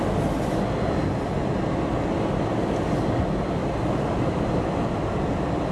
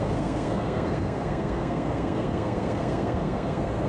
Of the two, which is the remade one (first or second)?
second